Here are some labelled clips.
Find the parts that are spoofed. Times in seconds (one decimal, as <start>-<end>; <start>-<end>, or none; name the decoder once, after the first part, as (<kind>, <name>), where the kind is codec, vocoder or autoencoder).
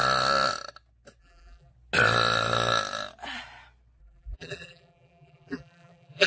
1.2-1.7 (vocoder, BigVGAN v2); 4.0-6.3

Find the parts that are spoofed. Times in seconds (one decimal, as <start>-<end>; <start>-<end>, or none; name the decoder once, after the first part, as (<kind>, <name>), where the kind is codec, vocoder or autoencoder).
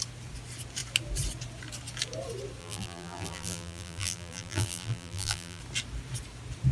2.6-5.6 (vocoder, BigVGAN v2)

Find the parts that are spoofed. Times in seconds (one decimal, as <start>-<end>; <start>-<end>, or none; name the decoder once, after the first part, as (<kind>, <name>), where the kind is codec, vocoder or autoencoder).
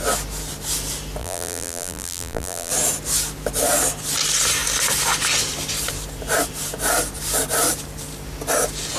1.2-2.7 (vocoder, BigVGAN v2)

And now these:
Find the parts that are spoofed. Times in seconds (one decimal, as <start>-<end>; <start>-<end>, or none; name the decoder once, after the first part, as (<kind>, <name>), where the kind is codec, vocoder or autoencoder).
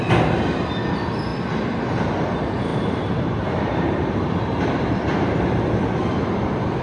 2.7-5.8 (vocoder, BigVGAN v2)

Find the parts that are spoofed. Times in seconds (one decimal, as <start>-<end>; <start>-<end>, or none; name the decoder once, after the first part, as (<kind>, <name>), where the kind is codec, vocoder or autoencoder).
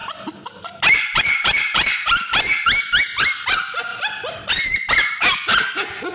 0.0-3.0 (vocoder, BigVGAN v2)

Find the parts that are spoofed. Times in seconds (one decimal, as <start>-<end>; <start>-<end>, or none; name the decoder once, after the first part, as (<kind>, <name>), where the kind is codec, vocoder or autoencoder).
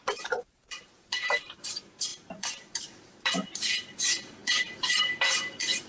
0.0-5.9 (vocoder, BigVGAN v2)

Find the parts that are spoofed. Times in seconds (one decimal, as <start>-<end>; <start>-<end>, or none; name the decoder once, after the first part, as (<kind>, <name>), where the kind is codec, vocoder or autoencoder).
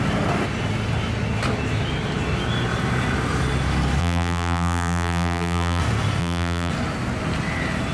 4.0-5.8 (vocoder, BigVGAN v2); 6.2-6.7